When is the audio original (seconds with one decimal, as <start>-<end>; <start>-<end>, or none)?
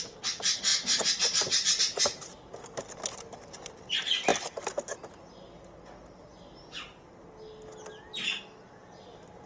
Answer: 0.0-9.5